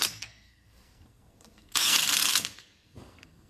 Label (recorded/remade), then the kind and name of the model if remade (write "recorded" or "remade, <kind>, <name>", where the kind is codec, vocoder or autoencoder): remade, codec, SNAC